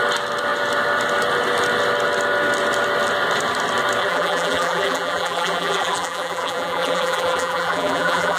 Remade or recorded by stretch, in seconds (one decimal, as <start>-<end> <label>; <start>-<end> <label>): 0.0-4.0 recorded; 4.0-8.4 remade